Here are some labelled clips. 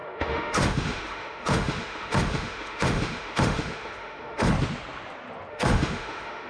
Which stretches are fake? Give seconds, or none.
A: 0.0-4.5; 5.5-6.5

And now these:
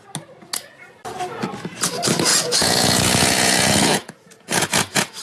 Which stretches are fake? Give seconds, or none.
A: 2.3-5.2

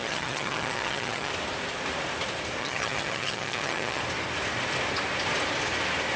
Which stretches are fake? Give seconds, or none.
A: 0.0-1.3; 2.6-4.0

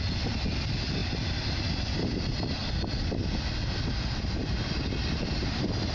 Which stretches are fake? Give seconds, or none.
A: none

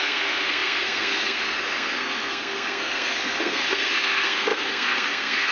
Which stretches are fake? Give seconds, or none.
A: 0.0-5.5

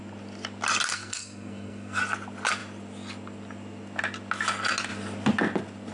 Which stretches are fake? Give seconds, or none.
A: 0.9-2.0